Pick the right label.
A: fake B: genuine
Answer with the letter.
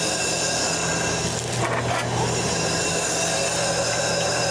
B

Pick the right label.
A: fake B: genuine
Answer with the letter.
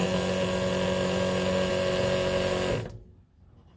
B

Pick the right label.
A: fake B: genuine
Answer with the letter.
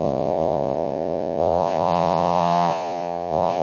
A